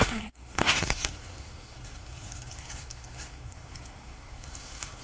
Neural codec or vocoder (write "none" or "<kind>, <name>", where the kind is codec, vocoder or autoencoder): codec, SNAC